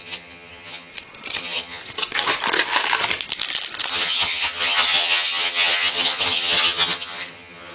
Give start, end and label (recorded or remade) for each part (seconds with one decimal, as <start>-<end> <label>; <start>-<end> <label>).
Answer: 0.0-0.9 remade; 0.9-1.4 recorded; 1.4-1.8 remade; 1.8-3.9 recorded; 3.9-7.7 remade